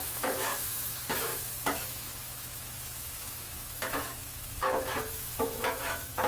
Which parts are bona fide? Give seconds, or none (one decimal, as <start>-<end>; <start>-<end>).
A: none